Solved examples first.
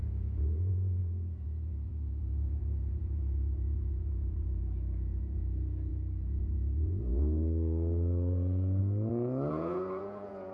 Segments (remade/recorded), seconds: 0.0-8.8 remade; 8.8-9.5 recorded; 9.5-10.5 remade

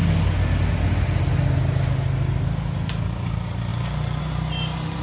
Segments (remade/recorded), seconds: 0.0-5.0 recorded